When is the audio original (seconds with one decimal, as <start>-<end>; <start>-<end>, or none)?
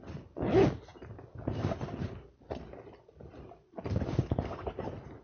0.0-5.2